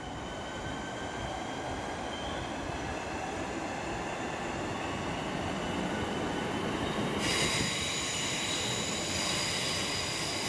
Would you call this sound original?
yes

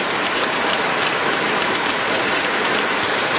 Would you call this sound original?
no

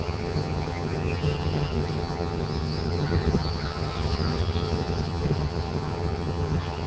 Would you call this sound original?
no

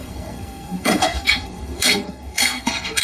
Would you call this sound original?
no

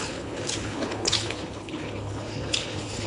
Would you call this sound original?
no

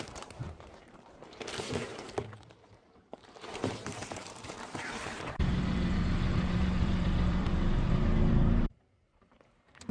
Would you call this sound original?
no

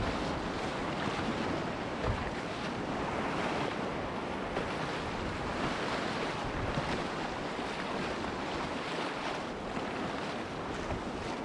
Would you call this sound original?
yes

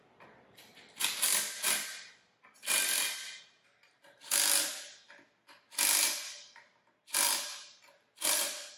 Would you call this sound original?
yes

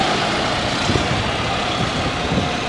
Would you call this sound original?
yes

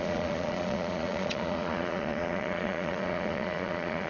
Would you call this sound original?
no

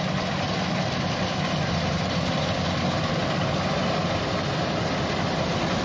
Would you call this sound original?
yes